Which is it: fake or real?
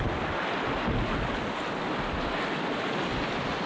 real